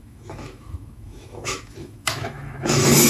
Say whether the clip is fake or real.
fake